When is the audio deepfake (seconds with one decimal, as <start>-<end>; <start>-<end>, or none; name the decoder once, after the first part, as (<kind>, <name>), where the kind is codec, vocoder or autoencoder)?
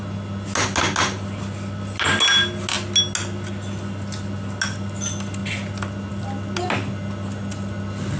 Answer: none